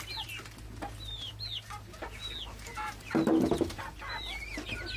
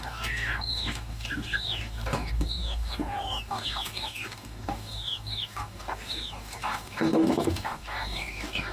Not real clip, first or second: second